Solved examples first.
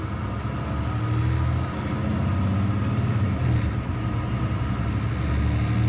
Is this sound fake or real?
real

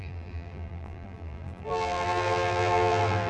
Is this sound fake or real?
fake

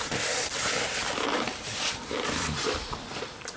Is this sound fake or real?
fake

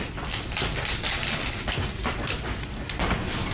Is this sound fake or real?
fake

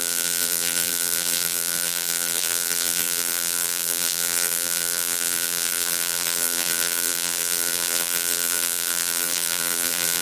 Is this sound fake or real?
fake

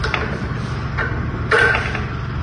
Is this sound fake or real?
real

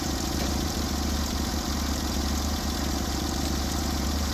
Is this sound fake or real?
fake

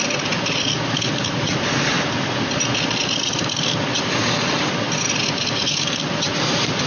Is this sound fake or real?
real